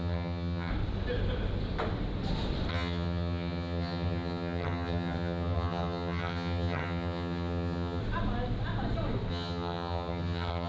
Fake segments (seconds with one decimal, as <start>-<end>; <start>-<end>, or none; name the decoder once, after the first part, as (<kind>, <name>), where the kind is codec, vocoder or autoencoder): 0.0-0.7 (vocoder, HiFi-GAN); 2.7-8.0; 9.3-10.7